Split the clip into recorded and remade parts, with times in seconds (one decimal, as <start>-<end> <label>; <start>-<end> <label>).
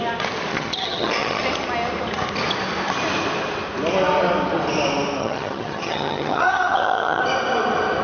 0.0-0.5 recorded; 0.5-1.4 remade; 1.4-5.2 recorded; 5.2-7.2 remade; 7.2-8.0 recorded